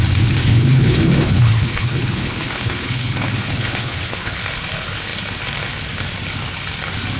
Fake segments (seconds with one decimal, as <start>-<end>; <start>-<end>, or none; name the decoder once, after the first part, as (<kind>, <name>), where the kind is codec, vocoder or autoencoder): 0.4-4.4 (codec, HILCodec)